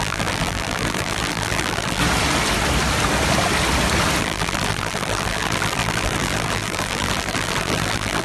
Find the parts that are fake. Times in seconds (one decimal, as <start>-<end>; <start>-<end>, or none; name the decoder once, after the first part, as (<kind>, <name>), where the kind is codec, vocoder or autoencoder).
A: 0.0-2.0 (vocoder, BigVGAN v2); 4.2-8.2